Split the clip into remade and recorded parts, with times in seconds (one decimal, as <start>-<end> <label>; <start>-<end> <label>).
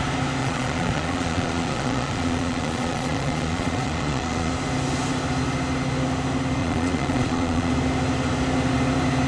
0.0-0.4 recorded; 0.4-4.5 remade; 4.5-6.6 recorded; 6.6-7.7 remade; 7.7-9.3 recorded